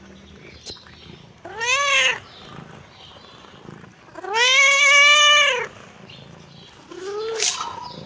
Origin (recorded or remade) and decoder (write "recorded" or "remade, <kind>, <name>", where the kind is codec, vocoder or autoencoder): recorded